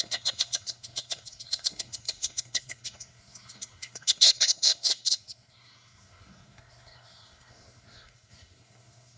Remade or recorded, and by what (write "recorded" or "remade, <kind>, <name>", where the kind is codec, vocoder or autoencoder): remade, codec, SNAC